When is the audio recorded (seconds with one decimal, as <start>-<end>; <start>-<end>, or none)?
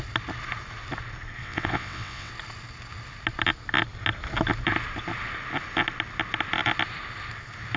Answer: 0.0-1.4; 2.3-7.8